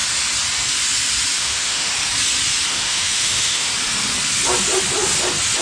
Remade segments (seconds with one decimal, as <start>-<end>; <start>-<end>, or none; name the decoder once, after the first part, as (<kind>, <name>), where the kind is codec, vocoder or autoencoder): 1.4-1.9 (autoencoder, DAC-VAE); 2.7-3.7